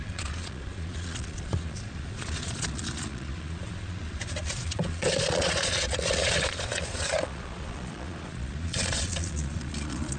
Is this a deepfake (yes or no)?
yes